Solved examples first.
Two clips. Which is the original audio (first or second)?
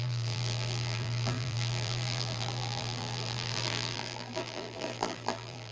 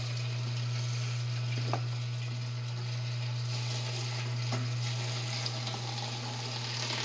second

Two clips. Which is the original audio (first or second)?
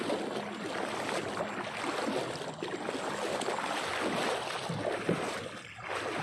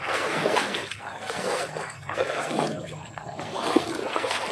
first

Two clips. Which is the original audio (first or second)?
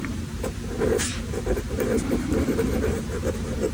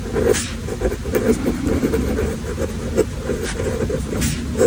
second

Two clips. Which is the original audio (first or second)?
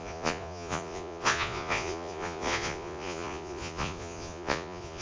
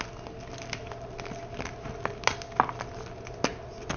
second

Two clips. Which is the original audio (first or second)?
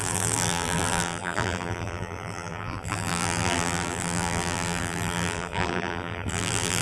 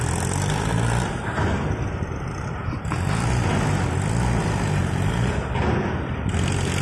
second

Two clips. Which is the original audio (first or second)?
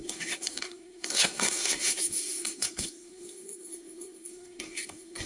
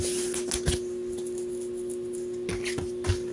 second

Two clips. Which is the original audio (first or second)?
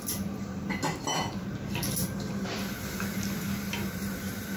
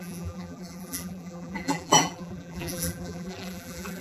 first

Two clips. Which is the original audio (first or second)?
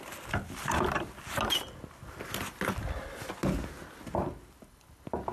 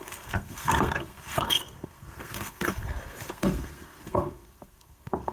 first